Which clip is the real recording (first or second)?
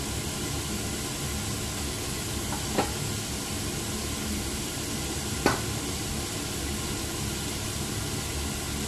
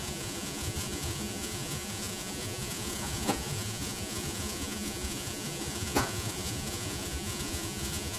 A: first